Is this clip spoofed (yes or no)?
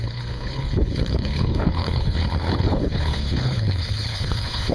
yes